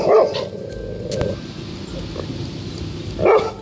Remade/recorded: recorded